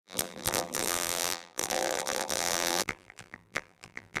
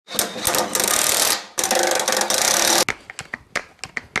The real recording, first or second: second